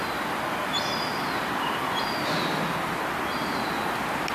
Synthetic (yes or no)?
no